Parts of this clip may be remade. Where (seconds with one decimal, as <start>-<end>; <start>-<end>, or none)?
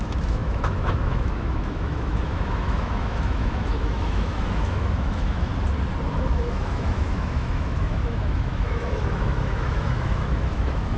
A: 0.0-5.5; 6.1-11.0